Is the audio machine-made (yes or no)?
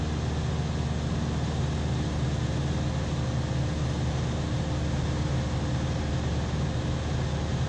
no